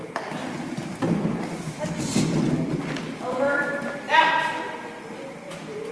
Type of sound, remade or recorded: recorded